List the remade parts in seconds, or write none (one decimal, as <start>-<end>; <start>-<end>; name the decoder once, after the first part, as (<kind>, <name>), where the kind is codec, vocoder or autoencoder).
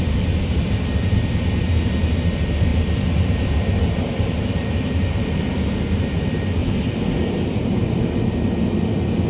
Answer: 2.7-5.3 (vocoder, BigVGAN v2); 6.6-7.9